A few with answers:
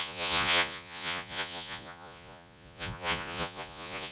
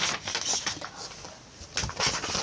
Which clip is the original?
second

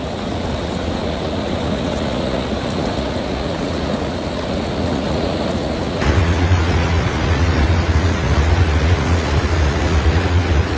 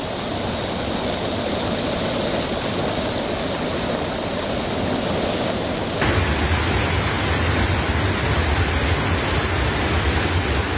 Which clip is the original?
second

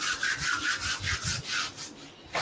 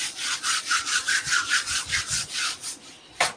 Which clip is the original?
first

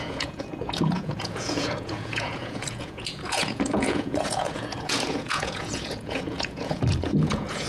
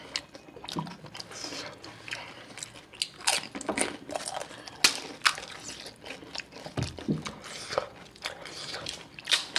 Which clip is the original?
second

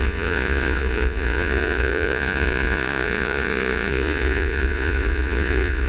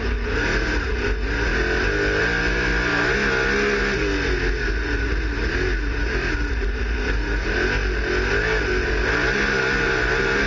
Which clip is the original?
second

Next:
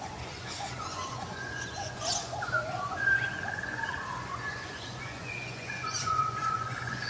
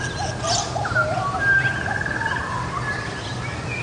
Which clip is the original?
second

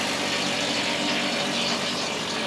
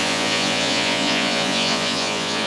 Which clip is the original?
first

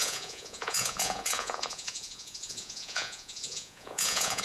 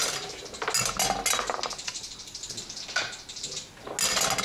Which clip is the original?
second